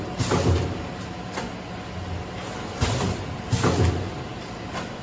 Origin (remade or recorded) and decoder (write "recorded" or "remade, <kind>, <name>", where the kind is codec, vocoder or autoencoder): recorded